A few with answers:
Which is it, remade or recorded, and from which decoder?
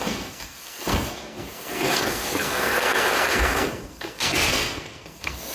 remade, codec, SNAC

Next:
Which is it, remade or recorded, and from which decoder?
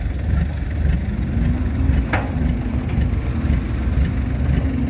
recorded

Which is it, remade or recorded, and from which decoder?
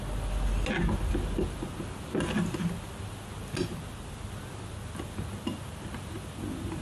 recorded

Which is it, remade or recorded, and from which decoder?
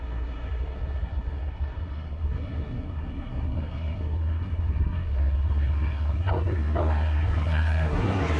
remade, codec, SNAC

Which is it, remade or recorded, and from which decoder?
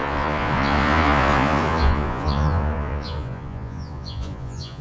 remade, vocoder, Vocos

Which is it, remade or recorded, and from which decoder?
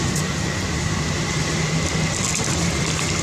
recorded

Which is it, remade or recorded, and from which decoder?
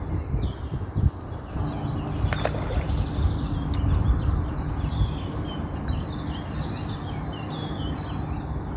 recorded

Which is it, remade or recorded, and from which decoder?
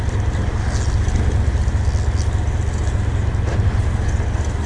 recorded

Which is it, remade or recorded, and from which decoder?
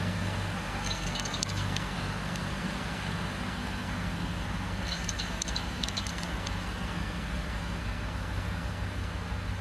remade, codec, SNAC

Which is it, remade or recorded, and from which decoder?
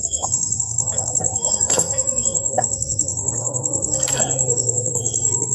remade, codec, SNAC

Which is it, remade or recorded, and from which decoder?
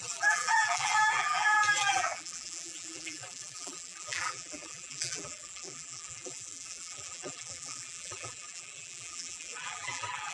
remade, vocoder, BigVGAN v2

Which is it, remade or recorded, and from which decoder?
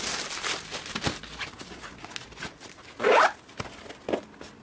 recorded